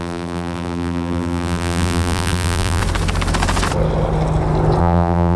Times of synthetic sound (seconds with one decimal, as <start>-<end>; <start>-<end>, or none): 0.0-2.8; 4.8-5.4